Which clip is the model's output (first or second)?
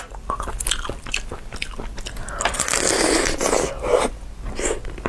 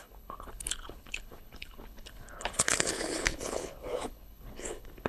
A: second